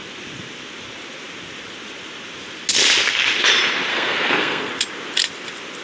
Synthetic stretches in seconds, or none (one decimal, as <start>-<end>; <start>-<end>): 3.9-4.7